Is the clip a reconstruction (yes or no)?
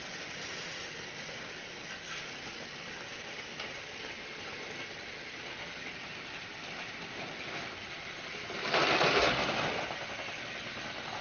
no